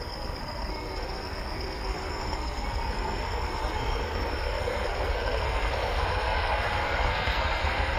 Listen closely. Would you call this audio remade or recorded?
remade